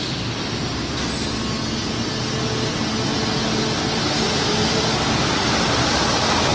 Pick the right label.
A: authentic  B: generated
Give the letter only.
A